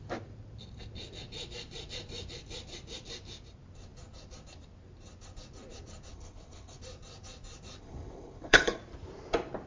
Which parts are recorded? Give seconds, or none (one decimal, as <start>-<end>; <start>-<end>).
0.0-6.1; 6.8-7.8; 8.8-9.7